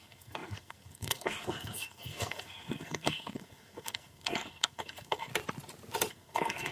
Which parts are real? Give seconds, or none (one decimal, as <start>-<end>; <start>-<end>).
5.3-6.1